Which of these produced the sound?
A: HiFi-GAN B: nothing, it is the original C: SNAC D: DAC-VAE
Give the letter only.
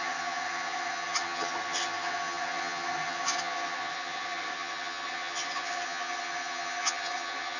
A